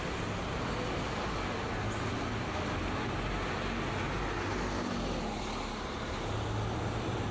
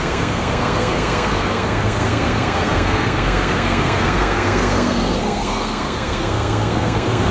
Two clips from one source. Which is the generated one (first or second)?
second